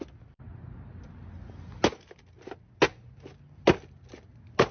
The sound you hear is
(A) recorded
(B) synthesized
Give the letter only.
A